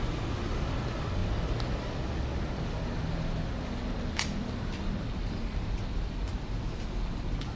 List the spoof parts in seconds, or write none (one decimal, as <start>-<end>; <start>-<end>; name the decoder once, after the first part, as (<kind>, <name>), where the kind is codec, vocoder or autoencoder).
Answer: none